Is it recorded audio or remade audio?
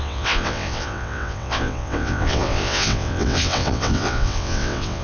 remade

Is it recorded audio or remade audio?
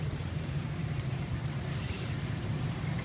remade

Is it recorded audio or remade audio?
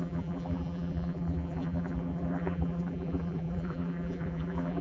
remade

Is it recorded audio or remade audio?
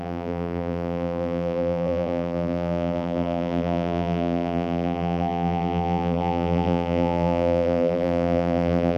remade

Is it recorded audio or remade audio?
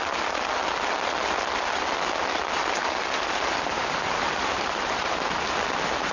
recorded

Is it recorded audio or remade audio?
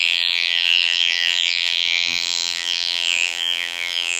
remade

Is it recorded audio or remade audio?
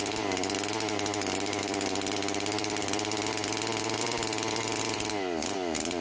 remade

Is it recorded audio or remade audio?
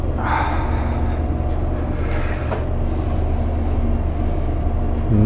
recorded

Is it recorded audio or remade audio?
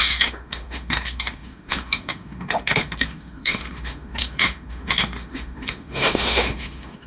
remade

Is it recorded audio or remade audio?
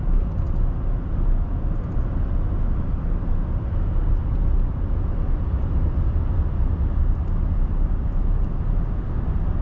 recorded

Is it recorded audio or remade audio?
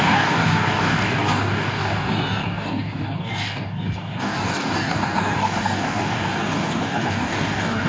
remade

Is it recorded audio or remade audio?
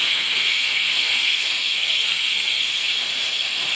remade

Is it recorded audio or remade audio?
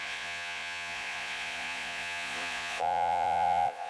remade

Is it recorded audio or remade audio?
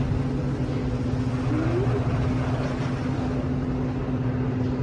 recorded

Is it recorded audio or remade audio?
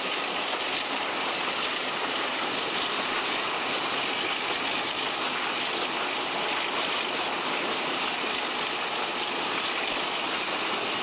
recorded